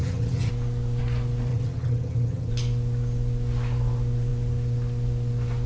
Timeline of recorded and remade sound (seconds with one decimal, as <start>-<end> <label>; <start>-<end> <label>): 0.0-0.5 remade; 0.5-1.5 recorded; 1.5-2.5 remade; 2.5-5.7 recorded